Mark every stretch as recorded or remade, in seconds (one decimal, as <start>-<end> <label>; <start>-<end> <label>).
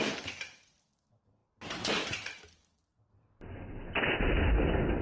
0.0-5.0 recorded